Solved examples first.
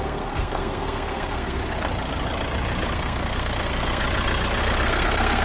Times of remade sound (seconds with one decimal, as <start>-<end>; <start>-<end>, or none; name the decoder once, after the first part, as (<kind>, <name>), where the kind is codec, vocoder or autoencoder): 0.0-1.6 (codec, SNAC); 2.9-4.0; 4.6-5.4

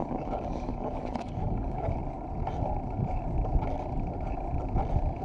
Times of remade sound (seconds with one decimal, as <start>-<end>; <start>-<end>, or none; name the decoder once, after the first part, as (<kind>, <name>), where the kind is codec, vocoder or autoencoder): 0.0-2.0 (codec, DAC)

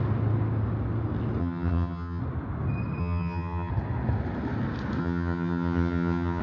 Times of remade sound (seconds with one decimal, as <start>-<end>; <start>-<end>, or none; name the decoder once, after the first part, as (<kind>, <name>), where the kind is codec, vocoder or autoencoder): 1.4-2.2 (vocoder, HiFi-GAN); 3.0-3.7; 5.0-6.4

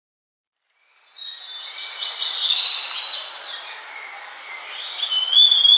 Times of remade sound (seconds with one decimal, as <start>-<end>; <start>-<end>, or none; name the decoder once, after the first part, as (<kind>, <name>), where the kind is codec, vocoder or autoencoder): 2.7-5.3 (vocoder, BigVGAN v2)

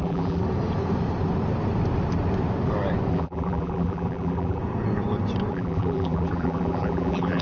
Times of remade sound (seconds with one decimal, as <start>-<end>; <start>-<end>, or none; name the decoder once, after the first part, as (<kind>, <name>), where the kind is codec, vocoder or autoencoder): 0.0-0.4 (vocoder, BigVGAN v2); 3.1-4.6; 5.5-7.4